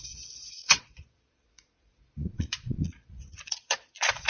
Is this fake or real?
fake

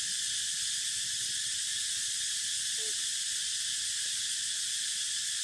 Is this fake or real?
real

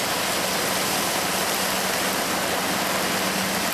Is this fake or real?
real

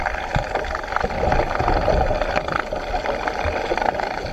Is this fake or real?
real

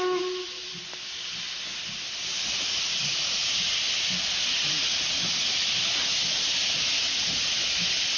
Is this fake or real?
real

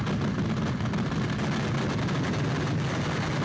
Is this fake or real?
real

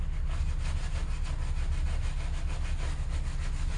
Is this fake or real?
real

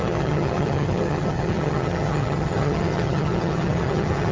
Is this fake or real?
fake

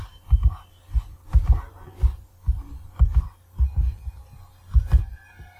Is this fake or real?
real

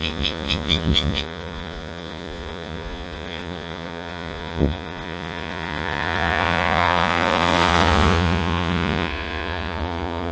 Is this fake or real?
fake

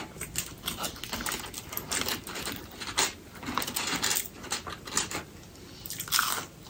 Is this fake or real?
real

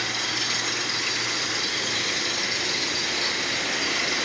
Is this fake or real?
real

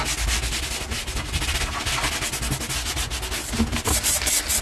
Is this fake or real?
real